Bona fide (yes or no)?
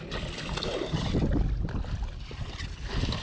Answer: yes